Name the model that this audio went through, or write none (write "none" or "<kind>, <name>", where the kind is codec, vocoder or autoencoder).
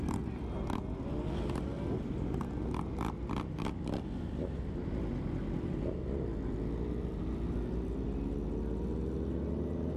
none